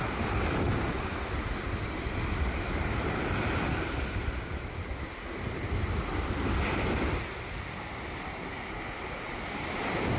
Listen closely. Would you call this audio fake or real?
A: real